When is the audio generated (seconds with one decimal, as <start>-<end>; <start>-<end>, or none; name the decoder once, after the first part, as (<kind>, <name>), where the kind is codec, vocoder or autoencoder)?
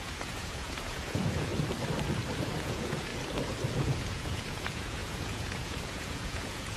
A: 0.0-1.5 (vocoder, Vocos); 2.6-3.1; 3.7-6.8